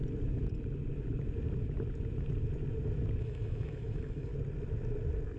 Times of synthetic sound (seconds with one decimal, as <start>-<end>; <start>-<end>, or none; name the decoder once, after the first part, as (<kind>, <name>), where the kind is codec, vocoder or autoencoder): 3.2-4.3 (autoencoder, DAC-VAE)